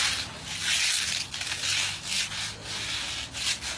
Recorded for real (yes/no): yes